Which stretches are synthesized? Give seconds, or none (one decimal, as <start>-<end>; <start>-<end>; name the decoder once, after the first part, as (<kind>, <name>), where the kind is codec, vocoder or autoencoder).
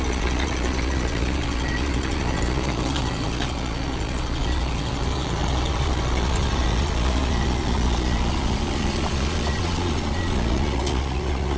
0.0-11.6 (vocoder, Vocos)